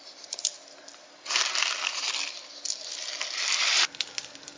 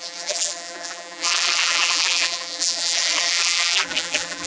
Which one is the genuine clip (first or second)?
first